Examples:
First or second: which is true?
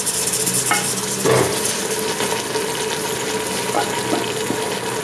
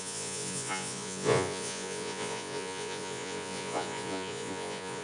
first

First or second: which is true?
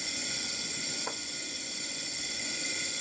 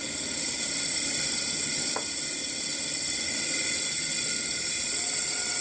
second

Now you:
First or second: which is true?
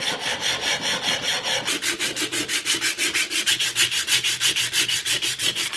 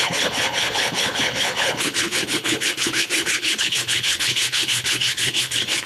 first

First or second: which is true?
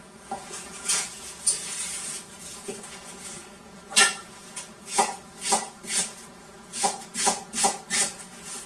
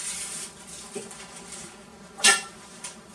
second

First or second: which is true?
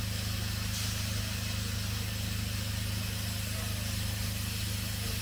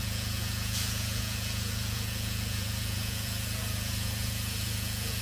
first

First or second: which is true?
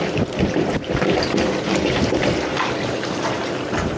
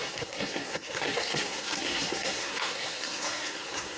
first